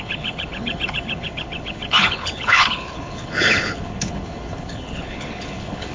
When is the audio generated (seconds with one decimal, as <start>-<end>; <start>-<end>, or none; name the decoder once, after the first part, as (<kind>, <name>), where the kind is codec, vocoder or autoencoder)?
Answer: 0.0-5.9 (codec, HILCodec)